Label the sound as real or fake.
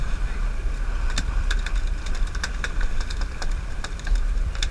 fake